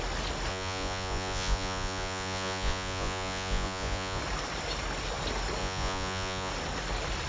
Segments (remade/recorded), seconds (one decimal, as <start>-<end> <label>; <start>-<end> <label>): 0.0-0.5 recorded; 0.5-4.2 remade; 4.2-5.6 recorded; 5.6-6.5 remade; 6.5-7.3 recorded